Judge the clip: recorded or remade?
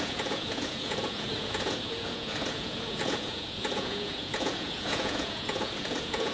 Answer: remade